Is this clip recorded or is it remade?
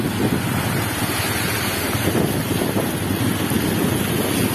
recorded